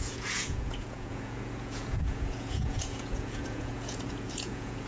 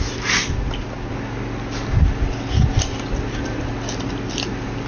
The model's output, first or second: first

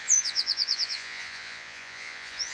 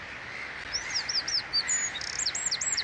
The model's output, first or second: first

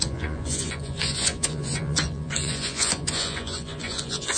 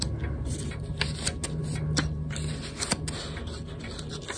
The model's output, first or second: first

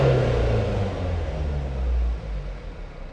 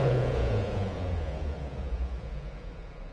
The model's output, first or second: second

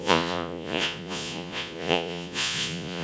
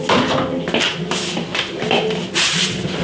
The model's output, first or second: first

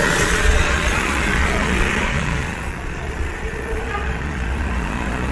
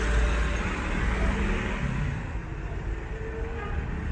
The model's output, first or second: first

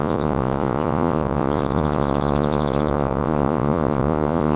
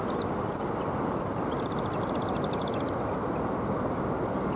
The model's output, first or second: first